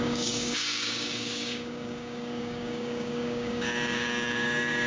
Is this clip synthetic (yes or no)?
yes